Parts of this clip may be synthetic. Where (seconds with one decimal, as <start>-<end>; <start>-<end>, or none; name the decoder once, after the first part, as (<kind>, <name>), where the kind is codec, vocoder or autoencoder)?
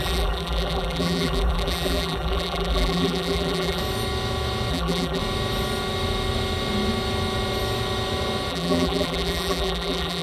0.0-3.8 (vocoder, BigVGAN v2); 4.7-5.2; 8.5-10.2